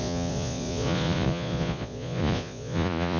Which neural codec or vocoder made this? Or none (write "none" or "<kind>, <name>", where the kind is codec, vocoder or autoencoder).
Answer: vocoder, Vocos